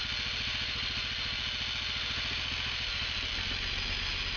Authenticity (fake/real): real